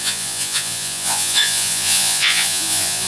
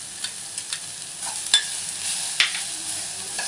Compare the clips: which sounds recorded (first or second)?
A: second